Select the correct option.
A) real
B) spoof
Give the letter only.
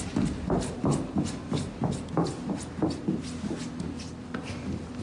A